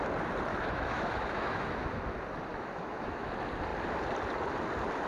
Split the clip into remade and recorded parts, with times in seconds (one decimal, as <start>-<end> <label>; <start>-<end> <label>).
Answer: 0.0-0.5 recorded; 0.5-2.0 remade; 2.0-2.5 recorded; 2.5-3.3 remade; 3.3-5.1 recorded